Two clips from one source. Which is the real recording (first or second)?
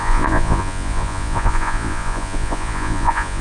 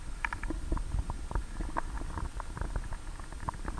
second